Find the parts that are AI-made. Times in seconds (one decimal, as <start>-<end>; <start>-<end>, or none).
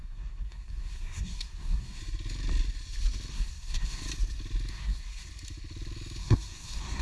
0.0-2.0; 3.3-4.0; 4.7-5.3; 6.2-7.0